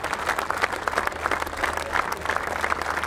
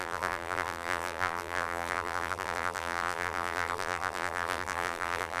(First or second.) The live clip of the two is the first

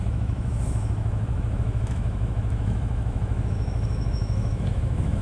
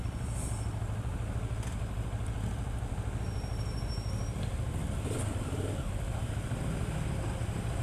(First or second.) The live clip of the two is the second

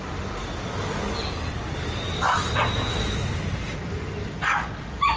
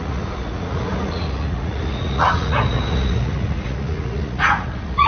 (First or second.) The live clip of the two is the first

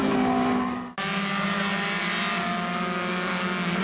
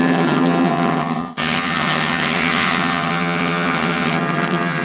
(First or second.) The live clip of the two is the first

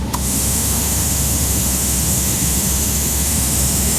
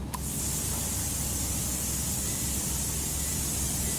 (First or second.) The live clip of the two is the second